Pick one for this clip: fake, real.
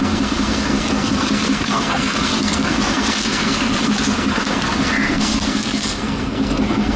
fake